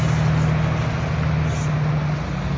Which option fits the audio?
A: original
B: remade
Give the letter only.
A